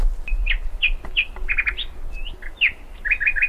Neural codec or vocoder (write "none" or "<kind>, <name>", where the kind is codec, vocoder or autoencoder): none